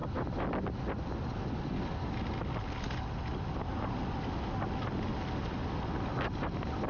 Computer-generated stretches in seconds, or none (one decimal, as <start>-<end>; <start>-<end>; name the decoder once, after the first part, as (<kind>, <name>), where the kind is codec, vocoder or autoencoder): none